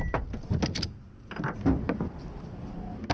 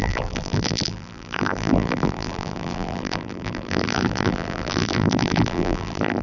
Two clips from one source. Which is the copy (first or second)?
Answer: second